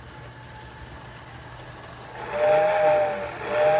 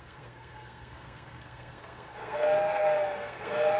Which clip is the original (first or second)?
first